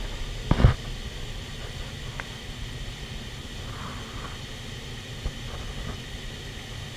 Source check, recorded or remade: recorded